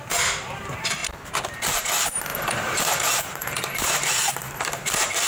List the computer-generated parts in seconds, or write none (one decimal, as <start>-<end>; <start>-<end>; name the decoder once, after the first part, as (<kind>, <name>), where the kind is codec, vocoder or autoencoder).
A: 0.0-5.3 (vocoder, BigVGAN v2)